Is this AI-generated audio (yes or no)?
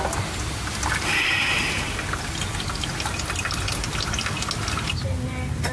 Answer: no